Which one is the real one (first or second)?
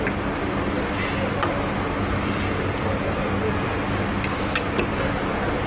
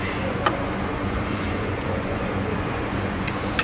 first